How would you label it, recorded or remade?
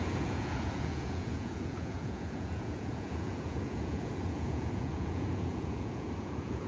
remade